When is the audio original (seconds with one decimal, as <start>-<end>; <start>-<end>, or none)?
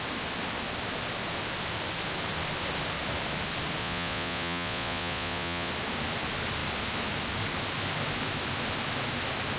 0.0-3.8; 5.7-9.6